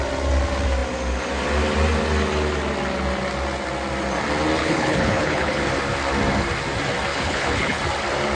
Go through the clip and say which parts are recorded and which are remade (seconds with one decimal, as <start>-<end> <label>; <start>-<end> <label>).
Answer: 0.0-4.6 recorded; 4.6-5.6 remade; 5.6-7.1 recorded; 7.1-7.8 remade; 7.8-8.3 recorded